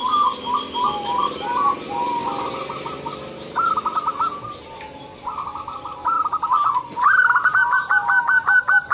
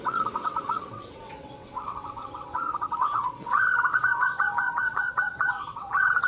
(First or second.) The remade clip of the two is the second